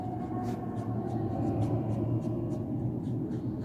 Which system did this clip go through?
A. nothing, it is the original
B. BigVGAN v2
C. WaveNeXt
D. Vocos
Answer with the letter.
A